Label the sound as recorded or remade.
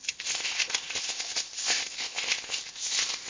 remade